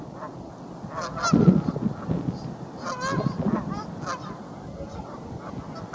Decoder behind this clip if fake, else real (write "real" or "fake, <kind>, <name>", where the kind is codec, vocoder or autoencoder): real